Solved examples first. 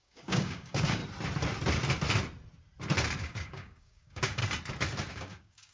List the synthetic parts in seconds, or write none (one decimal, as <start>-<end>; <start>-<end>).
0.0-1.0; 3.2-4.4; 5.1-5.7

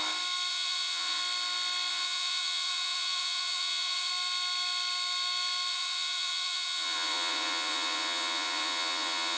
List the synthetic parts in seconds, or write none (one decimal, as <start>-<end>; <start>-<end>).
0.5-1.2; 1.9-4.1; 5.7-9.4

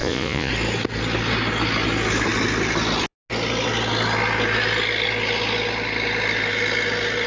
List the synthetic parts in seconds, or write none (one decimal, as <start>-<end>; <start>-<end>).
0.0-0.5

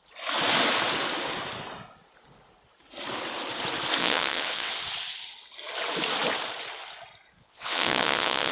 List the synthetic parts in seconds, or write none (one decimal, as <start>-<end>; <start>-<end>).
4.0-4.7; 7.4-8.5

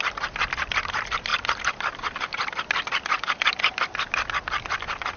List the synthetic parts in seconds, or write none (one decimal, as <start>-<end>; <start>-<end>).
none

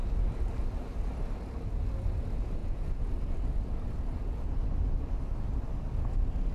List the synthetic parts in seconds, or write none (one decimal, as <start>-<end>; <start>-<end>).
2.6-3.1

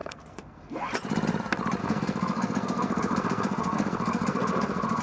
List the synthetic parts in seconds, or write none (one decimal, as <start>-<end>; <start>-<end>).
0.0-0.9; 1.8-5.0